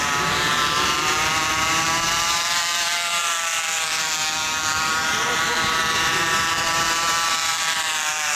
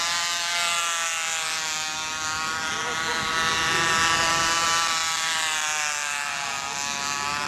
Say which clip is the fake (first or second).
first